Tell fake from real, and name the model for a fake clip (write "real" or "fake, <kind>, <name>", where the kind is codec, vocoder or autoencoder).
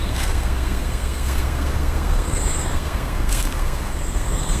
fake, codec, SNAC